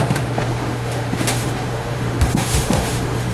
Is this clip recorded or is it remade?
remade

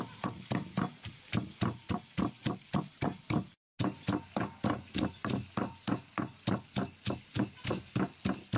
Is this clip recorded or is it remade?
recorded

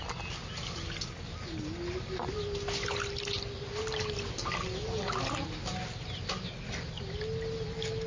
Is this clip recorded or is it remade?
recorded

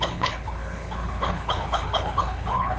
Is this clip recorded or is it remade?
remade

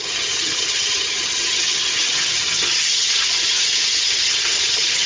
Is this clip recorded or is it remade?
remade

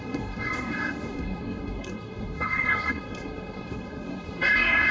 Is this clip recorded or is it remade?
remade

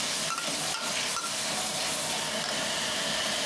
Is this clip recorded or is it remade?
recorded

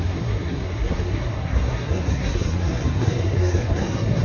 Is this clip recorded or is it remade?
remade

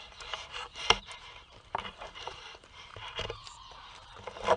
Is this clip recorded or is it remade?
remade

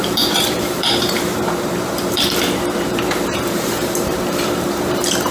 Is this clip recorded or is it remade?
remade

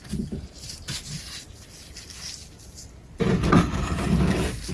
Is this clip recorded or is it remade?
recorded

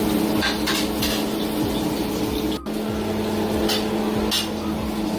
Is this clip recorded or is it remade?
recorded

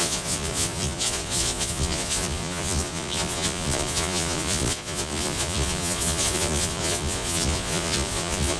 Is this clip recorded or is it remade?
remade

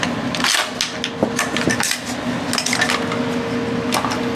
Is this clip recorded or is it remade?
recorded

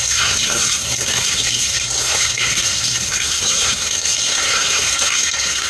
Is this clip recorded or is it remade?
remade